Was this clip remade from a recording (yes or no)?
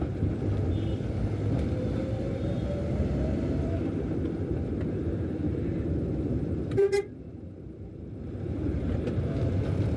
yes